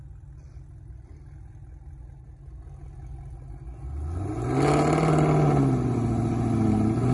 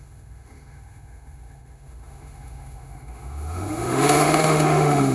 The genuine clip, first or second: first